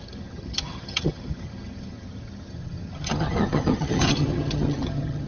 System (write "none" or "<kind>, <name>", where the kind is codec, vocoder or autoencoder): vocoder, HiFi-GAN